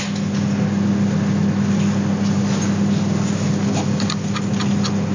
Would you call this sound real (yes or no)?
yes